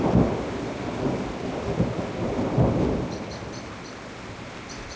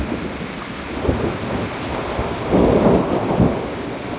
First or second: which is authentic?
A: first